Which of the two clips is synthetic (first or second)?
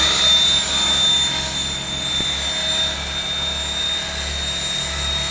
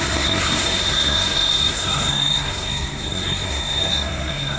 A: second